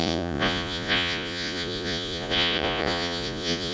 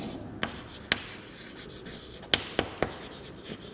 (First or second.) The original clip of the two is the second